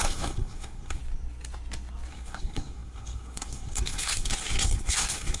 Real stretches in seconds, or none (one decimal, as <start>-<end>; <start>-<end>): 1.0-2.1